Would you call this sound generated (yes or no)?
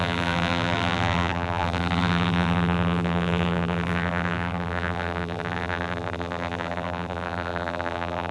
yes